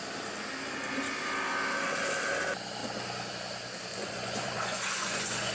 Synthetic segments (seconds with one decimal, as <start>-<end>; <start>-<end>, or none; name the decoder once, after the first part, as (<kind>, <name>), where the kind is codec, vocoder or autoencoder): 3.9-5.5 (vocoder, Vocos)